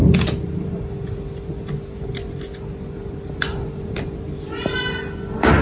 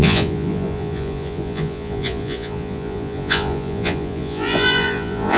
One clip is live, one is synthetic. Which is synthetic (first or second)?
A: second